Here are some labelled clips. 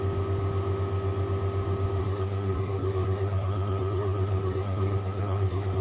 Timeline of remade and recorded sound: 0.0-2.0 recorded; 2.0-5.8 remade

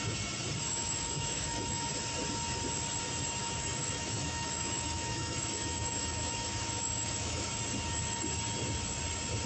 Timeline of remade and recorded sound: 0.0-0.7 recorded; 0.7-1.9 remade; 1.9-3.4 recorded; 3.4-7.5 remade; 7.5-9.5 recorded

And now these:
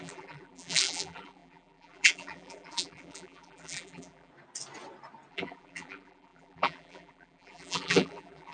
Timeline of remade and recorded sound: 0.0-4.3 remade; 4.3-5.3 recorded; 5.3-8.5 remade

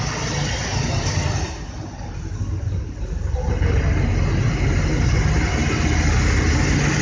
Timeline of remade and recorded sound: 0.0-7.0 recorded

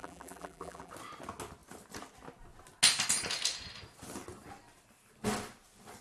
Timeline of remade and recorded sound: 0.0-0.9 remade; 0.9-6.0 recorded

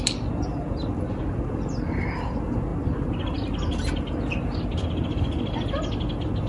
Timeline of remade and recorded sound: 0.0-6.5 recorded